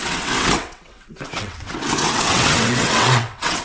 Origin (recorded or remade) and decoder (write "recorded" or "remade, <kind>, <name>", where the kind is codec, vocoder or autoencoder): remade, vocoder, WaveNeXt